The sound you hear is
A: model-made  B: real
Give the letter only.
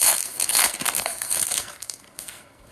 A